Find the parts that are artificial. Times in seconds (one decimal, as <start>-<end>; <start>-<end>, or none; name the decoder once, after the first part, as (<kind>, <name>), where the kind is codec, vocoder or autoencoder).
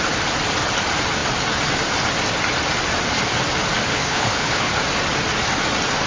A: 3.9-4.7 (codec, HILCodec)